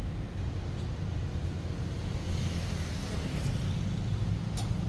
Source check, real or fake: real